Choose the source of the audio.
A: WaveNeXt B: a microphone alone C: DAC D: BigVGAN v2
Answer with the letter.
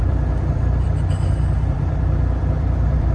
D